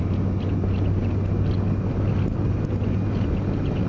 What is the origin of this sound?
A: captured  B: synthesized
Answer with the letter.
A